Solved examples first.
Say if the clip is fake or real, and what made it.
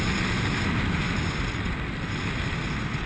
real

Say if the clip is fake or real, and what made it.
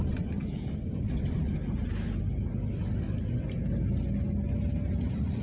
real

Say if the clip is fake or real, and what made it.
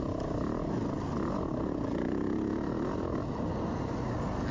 real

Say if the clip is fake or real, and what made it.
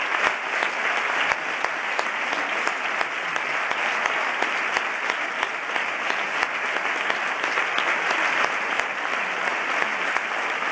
real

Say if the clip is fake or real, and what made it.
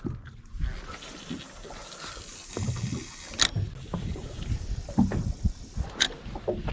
real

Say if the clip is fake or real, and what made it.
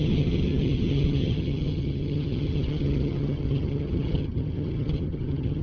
fake, vocoder, HiFi-GAN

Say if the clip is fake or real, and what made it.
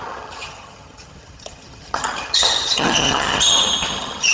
fake, vocoder, HiFi-GAN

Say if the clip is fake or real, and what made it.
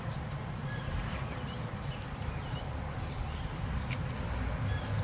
real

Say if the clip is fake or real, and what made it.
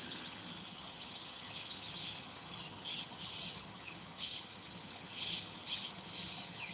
fake, vocoder, HiFi-GAN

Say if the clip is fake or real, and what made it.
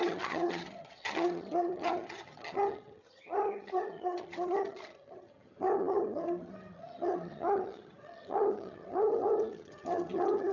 fake, vocoder, HiFi-GAN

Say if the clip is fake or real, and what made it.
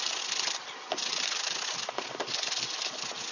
real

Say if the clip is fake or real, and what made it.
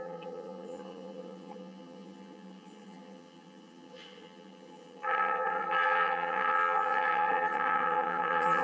fake, vocoder, HiFi-GAN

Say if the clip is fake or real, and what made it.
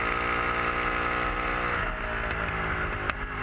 real